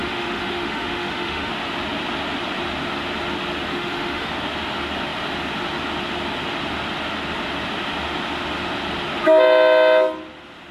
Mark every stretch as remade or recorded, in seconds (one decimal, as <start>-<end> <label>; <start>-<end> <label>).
0.0-1.5 remade; 1.5-3.7 recorded; 3.7-4.3 remade; 4.3-10.7 recorded